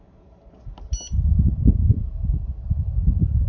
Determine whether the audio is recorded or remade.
recorded